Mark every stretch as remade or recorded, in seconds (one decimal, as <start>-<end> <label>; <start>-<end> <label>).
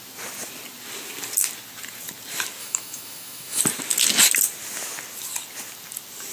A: 0.0-2.6 recorded; 2.6-3.6 remade; 3.6-6.3 recorded